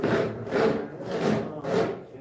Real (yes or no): yes